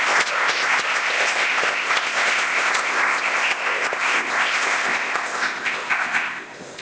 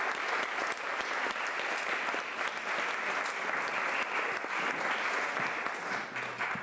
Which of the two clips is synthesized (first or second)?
first